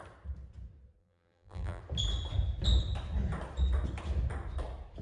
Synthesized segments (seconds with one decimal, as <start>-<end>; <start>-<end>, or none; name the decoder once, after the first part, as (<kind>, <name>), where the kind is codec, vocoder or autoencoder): 1.0-1.8 (vocoder, BigVGAN v2)